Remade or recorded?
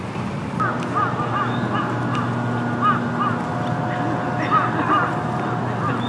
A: recorded